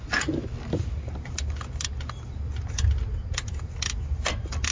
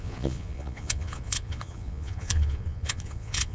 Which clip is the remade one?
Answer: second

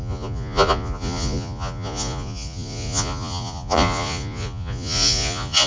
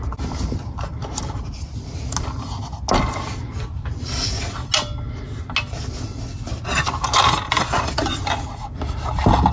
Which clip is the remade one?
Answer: first